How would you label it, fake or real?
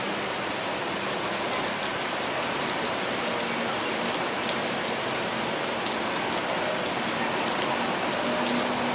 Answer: real